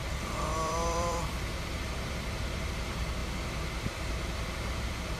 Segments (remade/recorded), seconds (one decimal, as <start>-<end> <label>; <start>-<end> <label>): 0.0-3.2 remade; 3.2-4.8 recorded; 4.8-5.2 remade